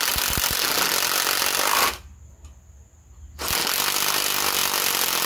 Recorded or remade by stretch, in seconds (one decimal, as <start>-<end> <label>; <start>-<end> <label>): 0.0-5.3 recorded